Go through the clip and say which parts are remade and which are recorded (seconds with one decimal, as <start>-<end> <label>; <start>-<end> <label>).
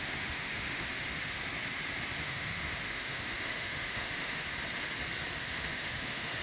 0.0-1.4 remade; 1.4-2.2 recorded; 2.2-4.4 remade; 4.4-5.4 recorded; 5.4-6.4 remade